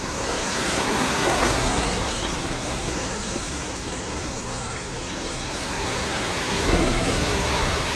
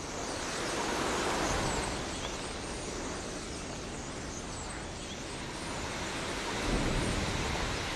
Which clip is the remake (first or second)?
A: first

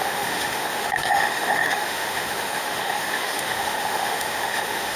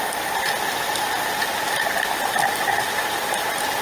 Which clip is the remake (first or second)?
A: first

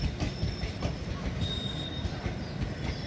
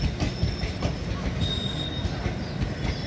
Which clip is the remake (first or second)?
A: first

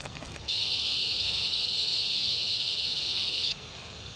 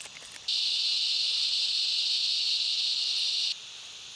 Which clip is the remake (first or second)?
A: first